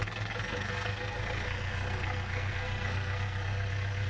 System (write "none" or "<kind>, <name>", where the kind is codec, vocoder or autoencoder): codec, SNAC